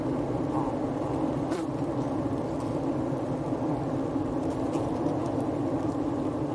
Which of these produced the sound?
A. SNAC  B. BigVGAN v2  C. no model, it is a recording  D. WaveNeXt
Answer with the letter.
B